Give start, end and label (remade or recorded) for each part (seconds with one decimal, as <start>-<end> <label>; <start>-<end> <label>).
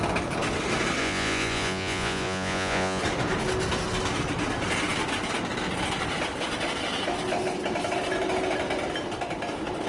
0.0-1.0 recorded; 1.0-3.0 remade; 3.0-9.9 recorded